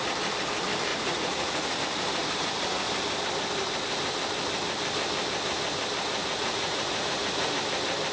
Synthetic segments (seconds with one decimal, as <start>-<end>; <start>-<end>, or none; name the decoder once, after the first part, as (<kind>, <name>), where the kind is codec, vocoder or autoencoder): 0.9-1.8 (vocoder, Vocos); 6.2-7.5